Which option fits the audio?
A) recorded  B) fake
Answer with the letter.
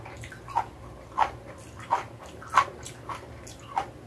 A